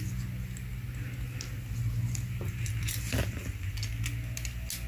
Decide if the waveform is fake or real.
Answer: real